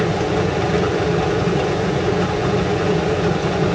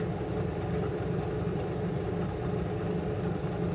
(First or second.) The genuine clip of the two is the second